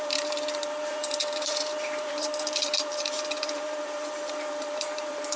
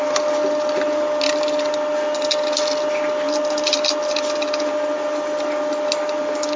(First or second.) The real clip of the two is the second